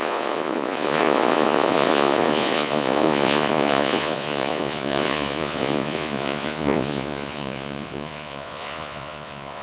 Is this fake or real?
fake